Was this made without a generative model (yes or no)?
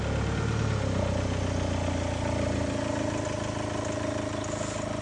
yes